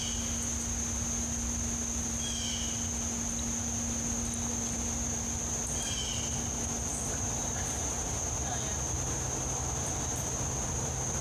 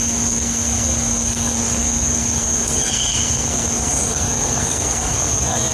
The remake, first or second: second